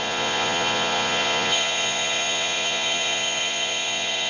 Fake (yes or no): yes